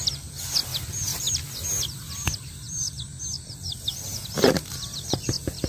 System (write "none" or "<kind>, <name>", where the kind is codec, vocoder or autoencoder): vocoder, BigVGAN v2